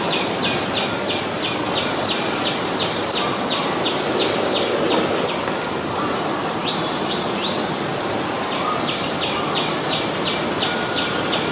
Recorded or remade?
recorded